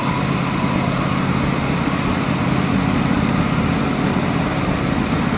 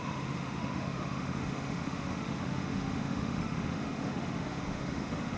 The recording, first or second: first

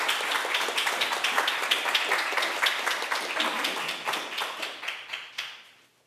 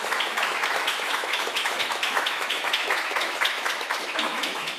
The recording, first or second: first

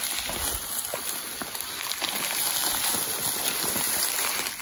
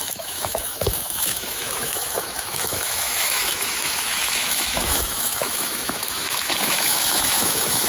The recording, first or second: first